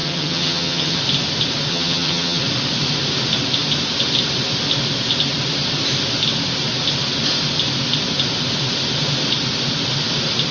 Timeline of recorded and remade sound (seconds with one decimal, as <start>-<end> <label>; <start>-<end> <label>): 0.0-1.0 remade; 1.0-1.7 recorded; 1.7-2.4 remade; 2.4-10.5 recorded